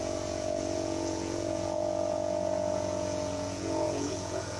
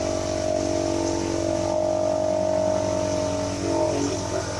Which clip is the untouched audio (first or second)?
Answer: second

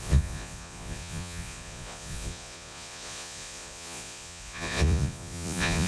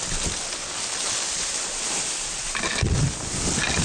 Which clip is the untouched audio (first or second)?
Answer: second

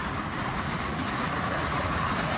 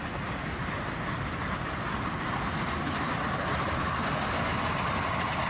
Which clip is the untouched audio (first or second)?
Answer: second